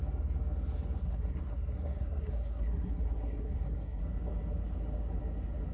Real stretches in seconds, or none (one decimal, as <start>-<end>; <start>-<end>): 0.0-1.0; 4.0-5.7